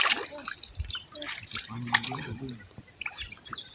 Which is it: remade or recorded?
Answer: remade